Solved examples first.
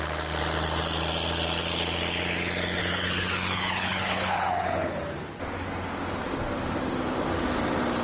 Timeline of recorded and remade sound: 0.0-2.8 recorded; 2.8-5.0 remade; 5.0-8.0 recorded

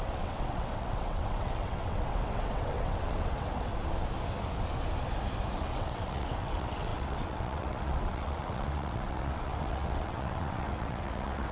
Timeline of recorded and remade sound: 0.0-3.7 remade; 3.7-5.6 recorded; 5.6-11.5 remade

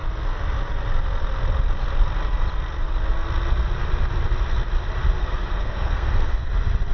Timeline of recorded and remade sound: 0.0-5.2 recorded; 5.2-6.5 remade; 6.5-6.9 recorded

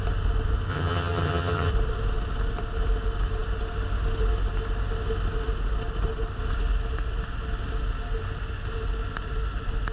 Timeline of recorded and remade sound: 0.0-0.7 recorded; 0.7-1.7 remade; 1.7-9.9 recorded

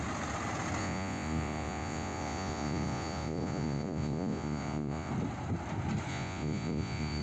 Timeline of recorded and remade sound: 0.0-0.8 recorded; 0.8-5.1 remade; 5.1-6.1 recorded; 6.1-7.2 remade

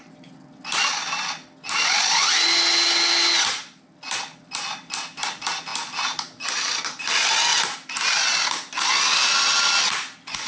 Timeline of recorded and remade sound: 0.0-10.5 recorded

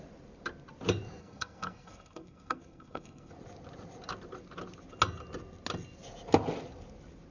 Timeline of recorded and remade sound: 0.0-1.2 recorded; 1.2-3.3 remade; 3.3-7.3 recorded